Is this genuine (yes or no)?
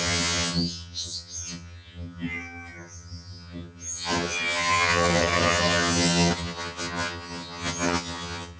no